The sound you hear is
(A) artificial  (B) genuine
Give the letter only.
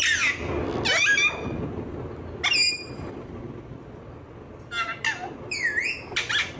B